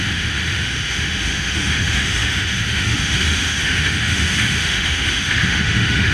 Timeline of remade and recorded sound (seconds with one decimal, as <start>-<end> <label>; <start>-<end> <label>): 0.0-6.1 remade